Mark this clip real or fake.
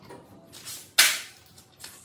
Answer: real